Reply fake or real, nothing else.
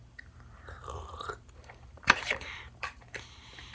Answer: fake